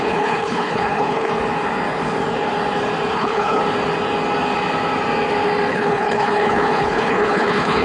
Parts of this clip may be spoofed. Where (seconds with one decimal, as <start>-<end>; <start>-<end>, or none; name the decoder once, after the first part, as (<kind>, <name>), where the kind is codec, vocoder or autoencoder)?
0.0-1.3 (codec, HILCodec); 3.1-3.6; 5.7-7.8